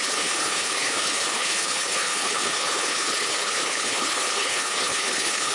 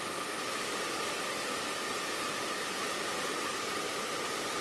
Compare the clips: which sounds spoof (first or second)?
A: first